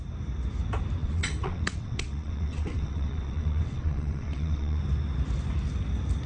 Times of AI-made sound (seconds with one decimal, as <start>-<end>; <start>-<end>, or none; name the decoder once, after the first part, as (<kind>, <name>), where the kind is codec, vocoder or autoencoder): 1.0-4.8 (vocoder, WaveNeXt)